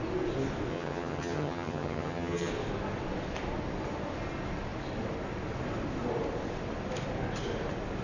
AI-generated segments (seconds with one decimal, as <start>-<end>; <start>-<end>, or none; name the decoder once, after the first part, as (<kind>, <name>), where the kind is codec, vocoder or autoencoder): 0.7-2.5 (vocoder, HiFi-GAN)